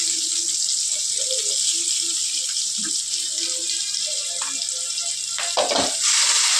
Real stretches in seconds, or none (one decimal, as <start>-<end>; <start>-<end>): 0.0-1.7; 5.1-6.6